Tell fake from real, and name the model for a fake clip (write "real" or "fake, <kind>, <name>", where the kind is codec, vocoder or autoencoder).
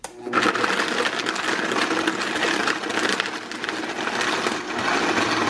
real